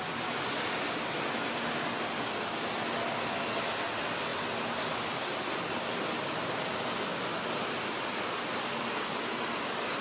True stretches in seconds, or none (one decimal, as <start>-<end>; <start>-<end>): 0.0-10.0